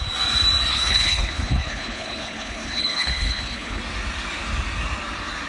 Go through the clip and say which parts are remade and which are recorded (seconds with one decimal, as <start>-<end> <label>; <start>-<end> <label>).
0.0-0.7 recorded; 0.7-3.8 remade; 3.8-5.5 recorded